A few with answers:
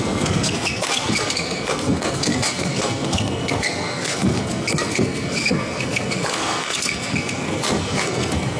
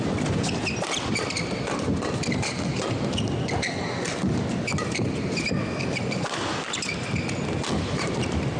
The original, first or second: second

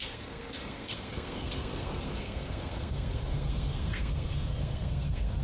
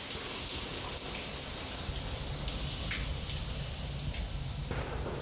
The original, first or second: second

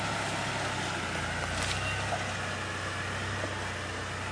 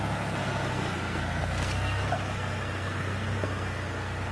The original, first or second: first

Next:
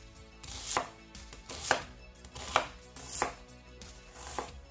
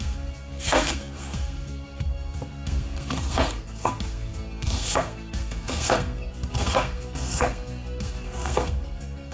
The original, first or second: first